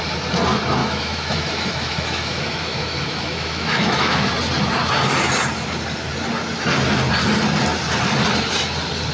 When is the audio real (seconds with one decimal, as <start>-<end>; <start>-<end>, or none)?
0.0-0.8; 4.3-9.1